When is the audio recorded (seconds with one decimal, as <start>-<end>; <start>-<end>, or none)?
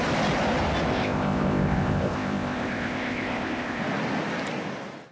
0.0-0.9; 3.8-5.1